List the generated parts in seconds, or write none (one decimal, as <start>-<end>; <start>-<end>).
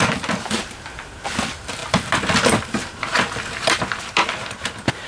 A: 0.0-5.1